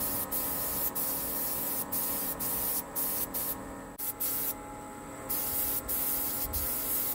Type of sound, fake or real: real